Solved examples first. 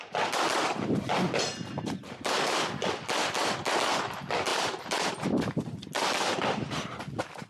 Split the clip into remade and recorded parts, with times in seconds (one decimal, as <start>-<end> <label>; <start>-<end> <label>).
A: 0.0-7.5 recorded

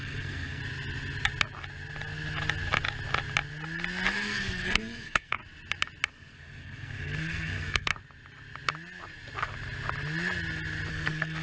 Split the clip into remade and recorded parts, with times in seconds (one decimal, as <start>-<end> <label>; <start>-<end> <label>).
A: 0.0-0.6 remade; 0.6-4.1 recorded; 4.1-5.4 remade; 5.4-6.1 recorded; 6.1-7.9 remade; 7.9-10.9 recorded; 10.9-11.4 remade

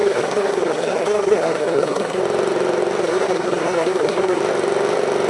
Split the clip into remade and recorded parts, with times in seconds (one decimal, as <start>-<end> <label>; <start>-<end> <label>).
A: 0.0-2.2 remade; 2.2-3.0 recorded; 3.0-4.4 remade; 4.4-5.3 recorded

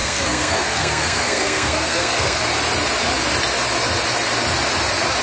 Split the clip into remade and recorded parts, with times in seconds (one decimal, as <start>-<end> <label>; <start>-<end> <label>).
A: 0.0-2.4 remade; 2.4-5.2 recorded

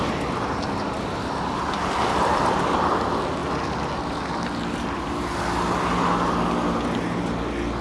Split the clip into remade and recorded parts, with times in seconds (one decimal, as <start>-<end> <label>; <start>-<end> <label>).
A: 0.0-7.8 recorded